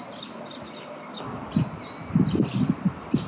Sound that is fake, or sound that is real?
real